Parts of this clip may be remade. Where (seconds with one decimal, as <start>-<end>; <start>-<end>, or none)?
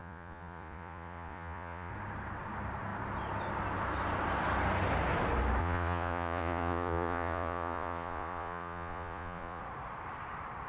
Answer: 0.0-1.9; 5.6-9.6